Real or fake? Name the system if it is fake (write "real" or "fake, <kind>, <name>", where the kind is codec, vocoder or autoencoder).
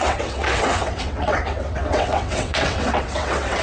fake, vocoder, WaveNeXt